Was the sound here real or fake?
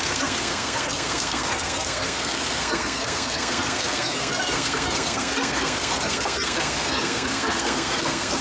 fake